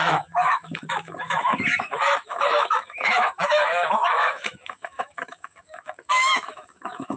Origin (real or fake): fake